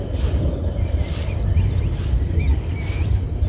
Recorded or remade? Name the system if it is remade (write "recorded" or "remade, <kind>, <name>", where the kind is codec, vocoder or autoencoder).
recorded